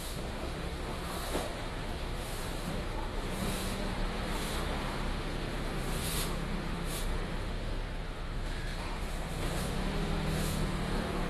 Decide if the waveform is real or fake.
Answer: fake